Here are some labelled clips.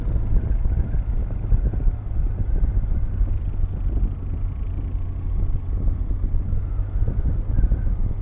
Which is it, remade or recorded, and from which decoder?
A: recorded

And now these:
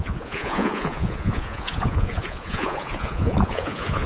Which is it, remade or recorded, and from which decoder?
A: remade, vocoder, Vocos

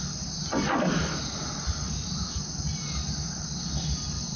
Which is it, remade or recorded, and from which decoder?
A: recorded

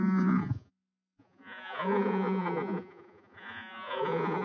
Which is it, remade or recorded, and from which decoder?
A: remade, vocoder, Vocos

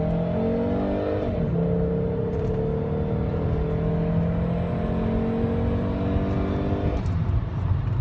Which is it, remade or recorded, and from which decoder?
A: recorded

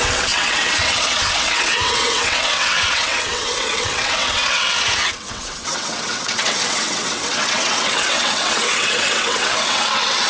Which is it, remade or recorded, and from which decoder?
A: remade, vocoder, WaveNeXt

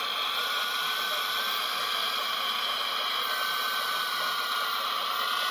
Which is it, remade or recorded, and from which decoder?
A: recorded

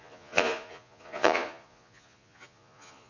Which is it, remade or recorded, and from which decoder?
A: remade, vocoder, Vocos